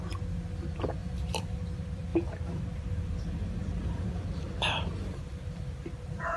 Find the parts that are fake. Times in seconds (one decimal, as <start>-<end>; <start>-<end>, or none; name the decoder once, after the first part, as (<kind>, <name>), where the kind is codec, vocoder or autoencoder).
1.0-1.6 (vocoder, BigVGAN v2); 2.1-5.9